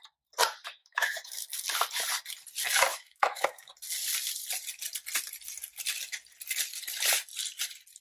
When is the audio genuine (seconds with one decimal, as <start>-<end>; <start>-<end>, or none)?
0.0-0.8; 1.5-2.9; 3.7-8.0